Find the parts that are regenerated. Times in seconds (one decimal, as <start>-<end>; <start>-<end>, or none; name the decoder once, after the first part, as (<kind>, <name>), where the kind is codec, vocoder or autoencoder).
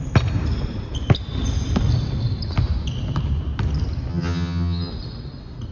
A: 4.1-4.9 (vocoder, HiFi-GAN)